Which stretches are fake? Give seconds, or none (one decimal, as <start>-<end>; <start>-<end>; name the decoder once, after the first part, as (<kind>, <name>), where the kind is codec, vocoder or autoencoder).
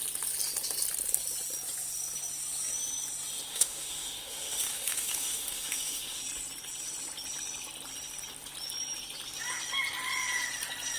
3.5-6.2 (autoencoder, DAC-VAE)